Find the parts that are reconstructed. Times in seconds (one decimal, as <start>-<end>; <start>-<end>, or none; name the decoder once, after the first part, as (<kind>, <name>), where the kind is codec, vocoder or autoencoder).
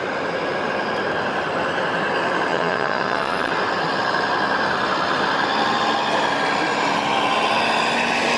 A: 2.5-3.5 (vocoder, Vocos)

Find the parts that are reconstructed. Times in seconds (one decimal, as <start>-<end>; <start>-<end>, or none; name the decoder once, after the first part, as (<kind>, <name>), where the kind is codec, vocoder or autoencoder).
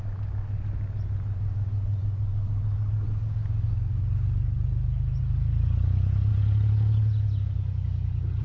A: none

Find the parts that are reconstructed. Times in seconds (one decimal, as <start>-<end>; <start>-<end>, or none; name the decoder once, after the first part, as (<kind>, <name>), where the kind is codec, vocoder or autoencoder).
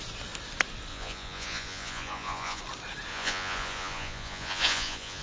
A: 0.9-2.6 (vocoder, Vocos); 3.1-5.2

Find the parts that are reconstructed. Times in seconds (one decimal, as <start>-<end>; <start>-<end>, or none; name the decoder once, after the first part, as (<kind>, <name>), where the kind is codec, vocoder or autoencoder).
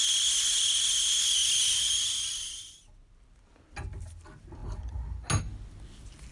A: none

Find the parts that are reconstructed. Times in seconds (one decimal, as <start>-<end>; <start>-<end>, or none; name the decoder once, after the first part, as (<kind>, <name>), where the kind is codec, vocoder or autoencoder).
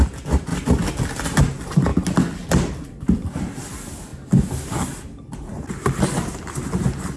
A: none